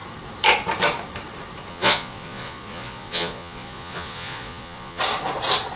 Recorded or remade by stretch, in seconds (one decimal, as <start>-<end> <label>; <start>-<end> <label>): 0.0-1.7 recorded; 1.7-5.0 remade; 5.0-5.8 recorded